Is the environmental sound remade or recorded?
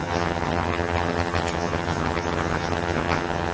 remade